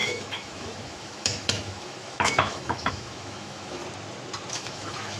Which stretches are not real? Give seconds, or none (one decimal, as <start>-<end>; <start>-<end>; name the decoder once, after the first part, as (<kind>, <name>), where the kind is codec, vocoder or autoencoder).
0.0-3.8 (autoencoder, DAC-VAE); 4.5-5.2